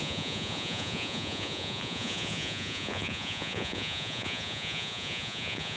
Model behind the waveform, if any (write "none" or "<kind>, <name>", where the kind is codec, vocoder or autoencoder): vocoder, Vocos